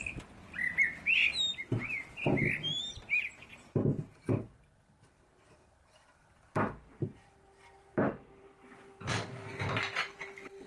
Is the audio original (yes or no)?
yes